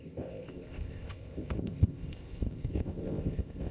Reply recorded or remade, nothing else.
remade